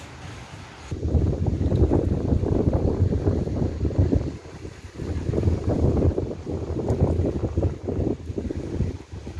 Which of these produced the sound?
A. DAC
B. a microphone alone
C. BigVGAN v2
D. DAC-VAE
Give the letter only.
B